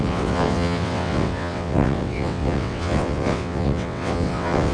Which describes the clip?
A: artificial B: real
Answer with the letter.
A